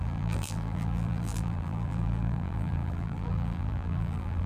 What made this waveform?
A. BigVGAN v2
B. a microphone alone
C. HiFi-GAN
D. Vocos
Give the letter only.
A